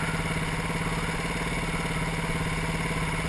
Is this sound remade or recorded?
recorded